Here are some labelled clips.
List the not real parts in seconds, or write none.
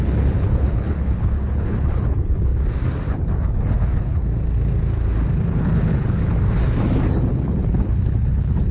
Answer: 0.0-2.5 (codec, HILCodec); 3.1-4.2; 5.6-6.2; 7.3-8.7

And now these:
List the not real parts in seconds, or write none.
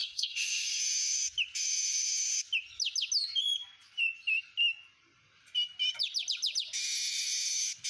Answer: 0.0-0.8 (codec, SNAC)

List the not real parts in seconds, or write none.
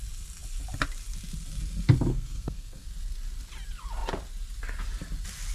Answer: 2.1-2.9 (codec, SNAC)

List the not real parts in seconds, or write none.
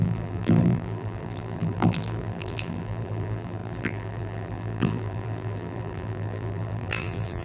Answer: 0.0-7.4 (vocoder, BigVGAN v2)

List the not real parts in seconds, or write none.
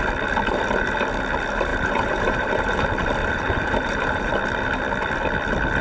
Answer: 1.7-2.8 (vocoder, BigVGAN v2); 3.2-4.3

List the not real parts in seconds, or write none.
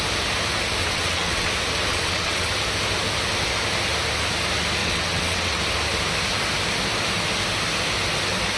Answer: 0.8-1.5 (vocoder, WaveNeXt); 1.9-2.5; 4.8-5.6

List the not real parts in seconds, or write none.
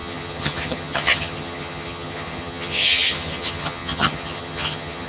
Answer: 0.0-5.1 (vocoder, HiFi-GAN)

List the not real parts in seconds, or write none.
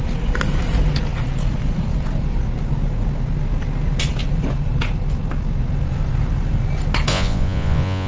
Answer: 7.1-8.1 (vocoder, Vocos)